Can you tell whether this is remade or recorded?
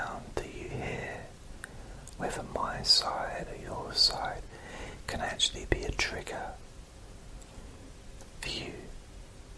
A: recorded